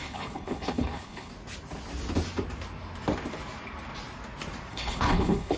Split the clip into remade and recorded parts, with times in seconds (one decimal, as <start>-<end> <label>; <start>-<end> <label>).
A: 0.0-1.3 remade; 1.3-4.7 recorded; 4.7-5.6 remade